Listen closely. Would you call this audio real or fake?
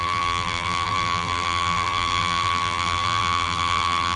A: fake